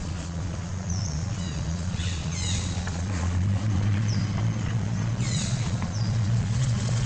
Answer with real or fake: fake